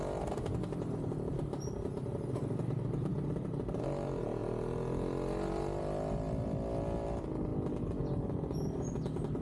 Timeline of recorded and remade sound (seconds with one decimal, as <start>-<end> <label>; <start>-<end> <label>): 0.0-9.4 recorded